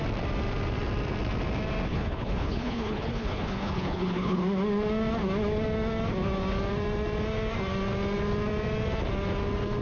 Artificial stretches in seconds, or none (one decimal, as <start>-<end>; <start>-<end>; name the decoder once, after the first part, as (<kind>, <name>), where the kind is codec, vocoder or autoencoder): 1.9-4.4 (codec, HILCodec)